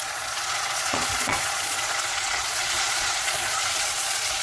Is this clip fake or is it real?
fake